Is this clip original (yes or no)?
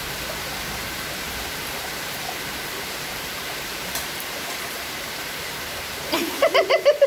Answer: no